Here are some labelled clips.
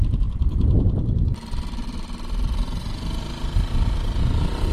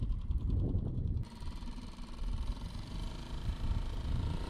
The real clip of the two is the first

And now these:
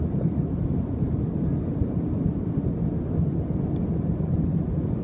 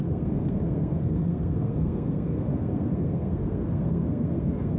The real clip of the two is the first